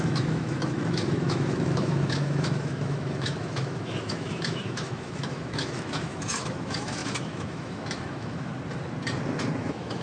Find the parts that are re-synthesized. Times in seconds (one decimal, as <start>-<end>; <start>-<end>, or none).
0.0-8.5; 9.6-10.0